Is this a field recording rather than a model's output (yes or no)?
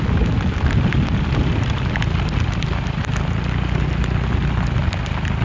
yes